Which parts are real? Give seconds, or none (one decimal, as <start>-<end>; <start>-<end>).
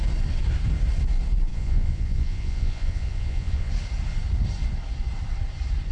0.0-1.5; 3.7-5.9